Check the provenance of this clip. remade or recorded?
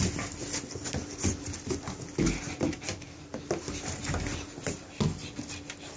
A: recorded